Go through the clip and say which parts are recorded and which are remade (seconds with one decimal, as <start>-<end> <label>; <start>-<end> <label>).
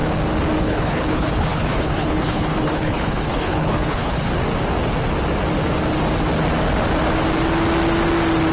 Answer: 0.0-0.6 recorded; 0.6-4.3 remade; 4.3-8.5 recorded